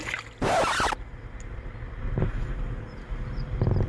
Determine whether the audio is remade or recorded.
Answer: recorded